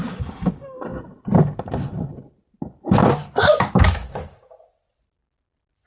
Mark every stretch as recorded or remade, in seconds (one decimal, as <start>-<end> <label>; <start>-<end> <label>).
0.0-0.9 recorded; 0.9-4.4 remade; 4.4-5.9 recorded